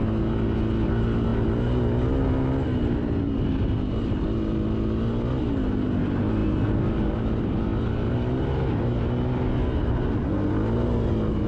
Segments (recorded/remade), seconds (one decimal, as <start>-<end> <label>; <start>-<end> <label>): 0.0-11.5 recorded

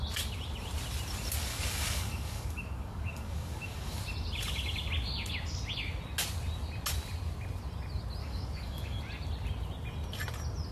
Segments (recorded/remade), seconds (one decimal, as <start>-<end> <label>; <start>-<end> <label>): 0.0-1.5 recorded; 1.5-4.0 remade; 4.0-8.2 recorded; 8.2-9.0 remade; 9.0-10.7 recorded

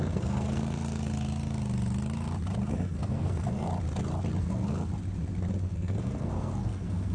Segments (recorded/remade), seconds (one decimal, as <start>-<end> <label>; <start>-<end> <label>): 0.0-1.1 remade; 1.1-2.7 recorded; 2.7-3.7 remade; 3.7-4.4 recorded; 4.4-4.9 remade; 4.9-5.6 recorded; 5.6-7.1 remade

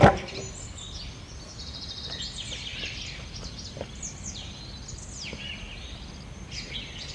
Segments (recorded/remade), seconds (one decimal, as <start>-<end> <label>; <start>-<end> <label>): 0.0-7.1 recorded

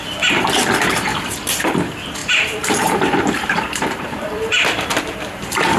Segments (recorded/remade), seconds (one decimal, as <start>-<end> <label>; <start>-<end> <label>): 0.0-2.2 recorded; 2.2-5.8 remade

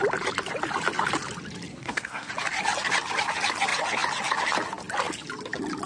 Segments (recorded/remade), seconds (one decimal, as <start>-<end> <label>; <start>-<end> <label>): 0.0-1.7 recorded; 1.7-2.3 remade; 2.3-5.9 recorded

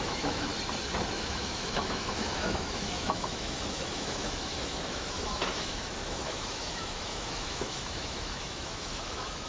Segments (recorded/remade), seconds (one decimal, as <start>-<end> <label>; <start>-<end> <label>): 0.0-0.5 remade; 0.5-1.1 recorded; 1.1-9.5 remade

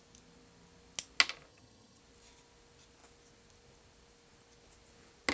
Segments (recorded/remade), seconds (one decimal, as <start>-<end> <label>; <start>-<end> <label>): 0.0-1.5 recorded; 1.5-2.0 remade; 2.0-5.3 recorded